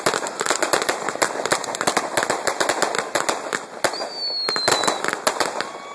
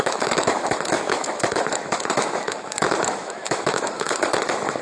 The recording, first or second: first